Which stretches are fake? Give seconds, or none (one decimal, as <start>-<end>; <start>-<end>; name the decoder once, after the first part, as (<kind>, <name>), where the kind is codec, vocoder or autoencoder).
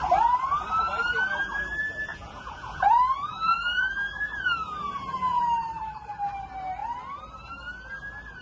2.1-5.4 (vocoder, Vocos)